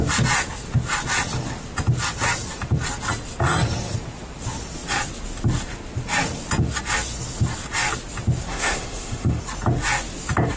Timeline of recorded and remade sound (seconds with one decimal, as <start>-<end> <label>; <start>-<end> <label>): 0.0-8.5 recorded; 8.5-9.4 remade; 9.4-10.6 recorded